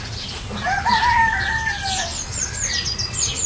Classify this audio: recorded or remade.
recorded